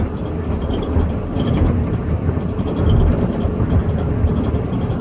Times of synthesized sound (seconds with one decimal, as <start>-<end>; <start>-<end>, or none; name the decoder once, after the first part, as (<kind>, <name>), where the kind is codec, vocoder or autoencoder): 0.0-3.8 (vocoder, BigVGAN v2); 4.6-5.0